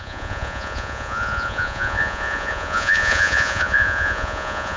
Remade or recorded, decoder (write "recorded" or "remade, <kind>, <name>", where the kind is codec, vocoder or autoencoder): remade, vocoder, Vocos